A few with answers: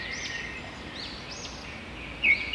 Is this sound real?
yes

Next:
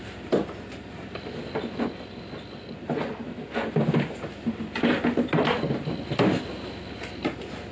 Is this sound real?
yes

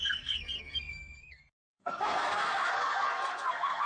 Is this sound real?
no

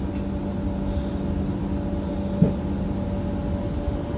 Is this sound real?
yes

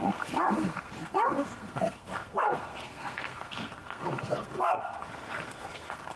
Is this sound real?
no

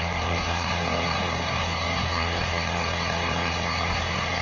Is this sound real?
no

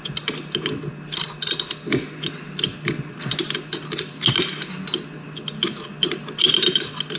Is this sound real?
yes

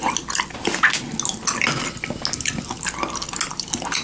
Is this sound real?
yes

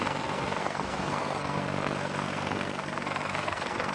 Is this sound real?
no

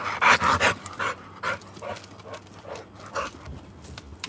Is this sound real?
yes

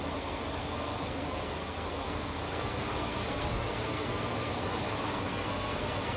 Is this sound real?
no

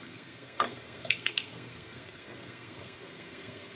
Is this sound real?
no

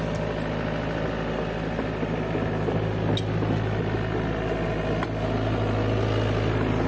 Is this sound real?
yes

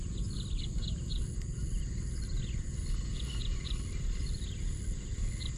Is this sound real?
yes